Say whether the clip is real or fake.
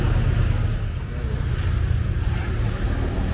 real